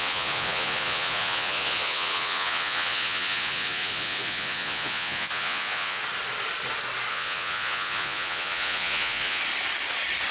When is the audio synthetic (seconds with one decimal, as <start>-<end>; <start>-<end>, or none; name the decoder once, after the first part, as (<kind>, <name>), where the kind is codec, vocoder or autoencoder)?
0.0-6.0 (vocoder, Vocos); 7.1-9.4